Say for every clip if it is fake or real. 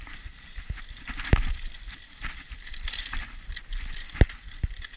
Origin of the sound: real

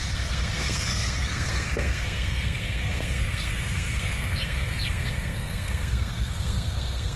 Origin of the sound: fake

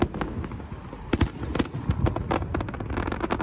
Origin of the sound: real